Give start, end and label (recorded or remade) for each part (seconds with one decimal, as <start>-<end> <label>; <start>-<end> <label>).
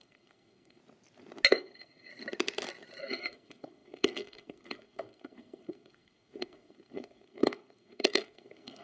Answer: 0.0-0.8 remade; 0.8-1.5 recorded; 1.5-2.1 remade; 2.1-3.0 recorded; 3.0-8.8 remade